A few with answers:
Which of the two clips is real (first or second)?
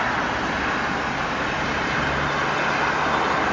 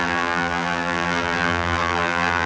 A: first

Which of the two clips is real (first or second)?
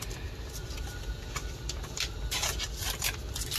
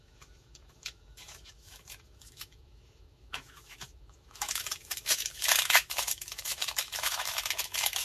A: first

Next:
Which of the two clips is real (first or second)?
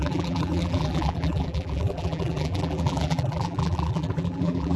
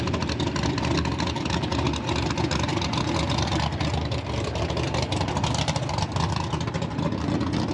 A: second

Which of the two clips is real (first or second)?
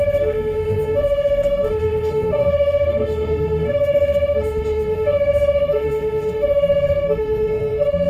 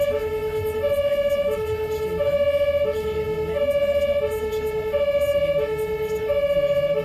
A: second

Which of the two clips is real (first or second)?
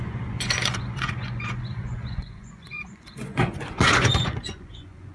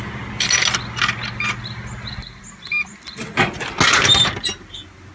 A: second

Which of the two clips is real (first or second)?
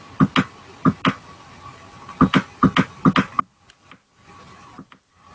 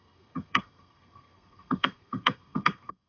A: first